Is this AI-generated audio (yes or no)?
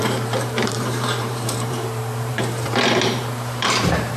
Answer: yes